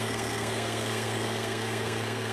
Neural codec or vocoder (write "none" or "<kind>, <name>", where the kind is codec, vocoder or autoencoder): codec, SNAC